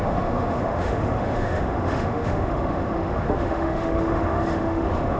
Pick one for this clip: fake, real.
fake